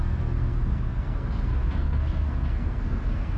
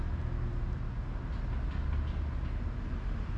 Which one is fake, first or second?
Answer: first